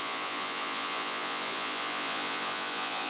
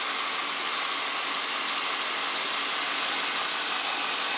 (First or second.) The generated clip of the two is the first